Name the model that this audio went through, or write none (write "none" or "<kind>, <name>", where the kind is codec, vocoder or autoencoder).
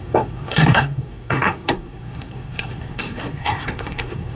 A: codec, SNAC